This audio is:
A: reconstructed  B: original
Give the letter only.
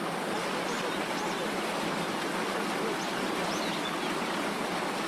B